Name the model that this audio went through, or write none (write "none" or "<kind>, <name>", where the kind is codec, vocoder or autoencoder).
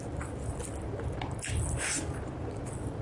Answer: none